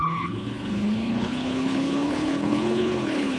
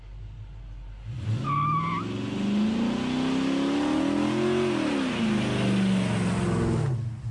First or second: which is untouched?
second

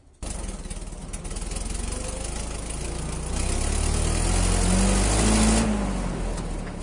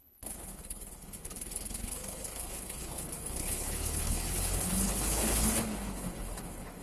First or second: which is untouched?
first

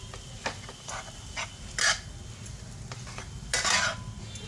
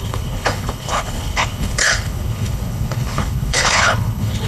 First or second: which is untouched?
first